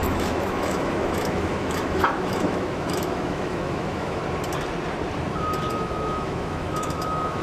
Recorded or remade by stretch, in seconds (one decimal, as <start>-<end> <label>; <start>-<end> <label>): 0.0-4.2 remade; 4.2-5.7 recorded; 5.7-7.4 remade